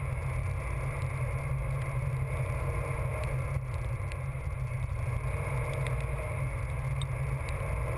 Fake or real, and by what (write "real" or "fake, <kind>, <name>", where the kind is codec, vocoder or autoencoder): real